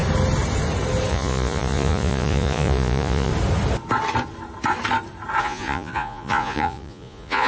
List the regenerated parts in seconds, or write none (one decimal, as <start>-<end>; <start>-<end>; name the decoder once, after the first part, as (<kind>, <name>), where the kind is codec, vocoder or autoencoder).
1.1-3.3 (vocoder, Vocos); 5.4-7.5